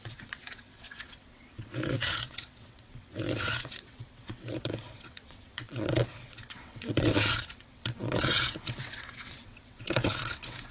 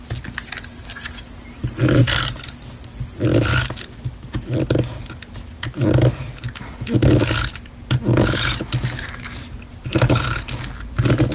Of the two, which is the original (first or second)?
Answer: second